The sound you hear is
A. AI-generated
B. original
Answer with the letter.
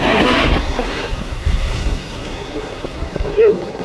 A